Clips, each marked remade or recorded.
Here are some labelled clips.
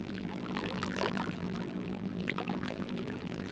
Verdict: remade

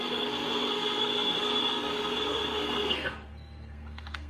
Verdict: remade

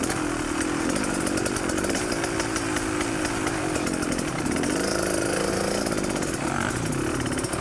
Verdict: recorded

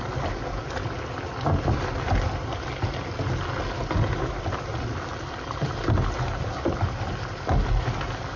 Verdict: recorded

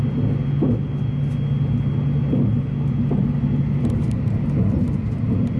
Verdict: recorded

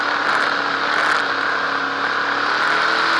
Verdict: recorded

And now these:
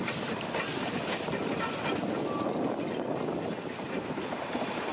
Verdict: recorded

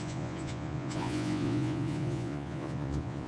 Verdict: remade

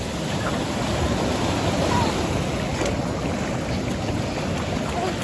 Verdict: recorded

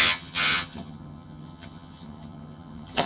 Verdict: remade